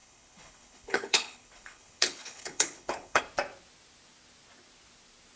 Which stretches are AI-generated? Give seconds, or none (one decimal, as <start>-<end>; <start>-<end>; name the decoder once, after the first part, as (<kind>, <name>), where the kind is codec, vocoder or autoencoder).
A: 0.0-3.2 (codec, HILCodec)